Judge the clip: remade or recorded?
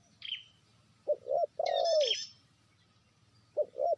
recorded